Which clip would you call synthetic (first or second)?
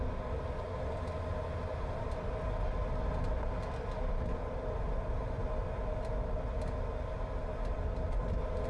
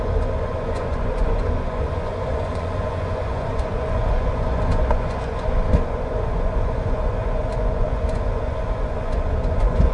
second